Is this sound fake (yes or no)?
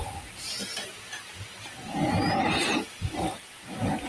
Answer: no